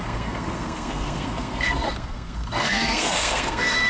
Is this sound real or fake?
fake